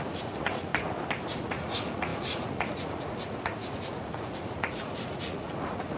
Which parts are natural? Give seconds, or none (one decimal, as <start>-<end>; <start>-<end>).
0.7-1.3